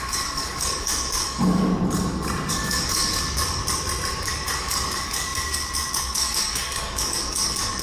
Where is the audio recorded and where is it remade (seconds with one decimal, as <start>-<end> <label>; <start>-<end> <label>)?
0.0-1.7 remade; 1.7-2.5 recorded; 2.5-3.6 remade; 3.6-4.2 recorded; 4.2-7.8 remade